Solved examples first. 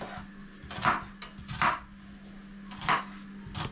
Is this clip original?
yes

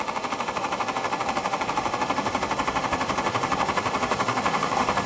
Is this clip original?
no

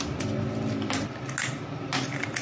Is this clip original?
yes